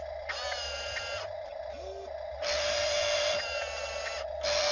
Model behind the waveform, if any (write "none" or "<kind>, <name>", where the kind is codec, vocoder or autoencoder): none